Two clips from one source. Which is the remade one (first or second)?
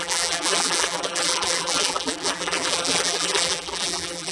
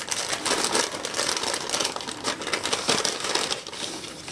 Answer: first